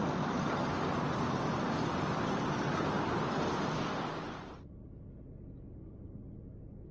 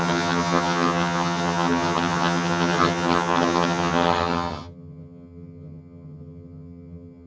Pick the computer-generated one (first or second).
second